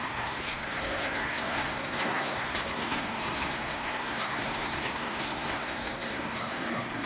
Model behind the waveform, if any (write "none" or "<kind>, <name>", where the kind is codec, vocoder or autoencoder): codec, SNAC